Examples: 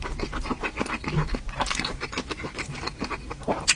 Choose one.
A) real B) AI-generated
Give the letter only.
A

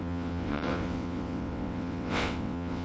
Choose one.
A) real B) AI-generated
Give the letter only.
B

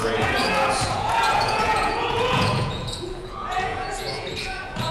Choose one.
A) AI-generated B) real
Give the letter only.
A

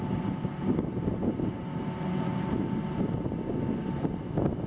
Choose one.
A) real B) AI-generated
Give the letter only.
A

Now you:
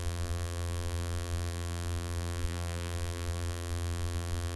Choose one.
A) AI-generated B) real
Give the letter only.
A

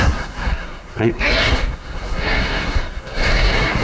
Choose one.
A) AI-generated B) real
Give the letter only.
A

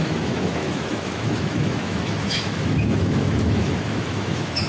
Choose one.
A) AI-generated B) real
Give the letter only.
A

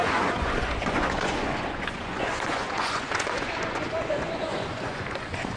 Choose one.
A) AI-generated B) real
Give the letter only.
A